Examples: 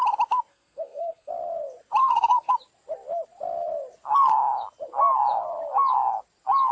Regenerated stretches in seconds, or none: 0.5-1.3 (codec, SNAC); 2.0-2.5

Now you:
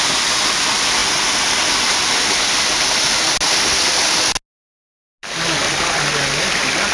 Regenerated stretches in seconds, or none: none

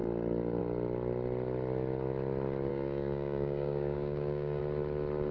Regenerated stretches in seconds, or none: 2.7-4.6 (codec, DAC)

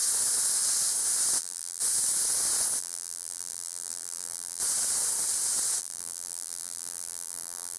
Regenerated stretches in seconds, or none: 1.4-1.8 (vocoder, BigVGAN v2); 2.8-4.6; 5.8-7.8

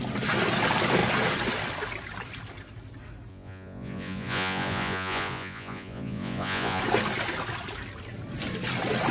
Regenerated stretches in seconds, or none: 3.3-6.8 (vocoder, Vocos)